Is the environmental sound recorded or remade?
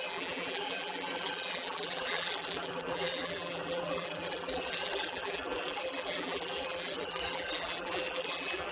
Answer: remade